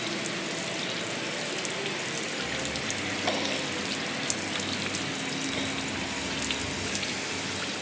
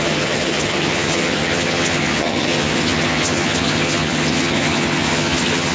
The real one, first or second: first